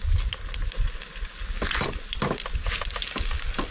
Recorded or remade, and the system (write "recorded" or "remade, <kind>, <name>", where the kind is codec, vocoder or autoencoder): recorded